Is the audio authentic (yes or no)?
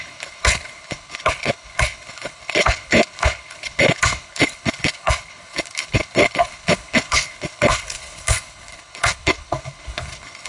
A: no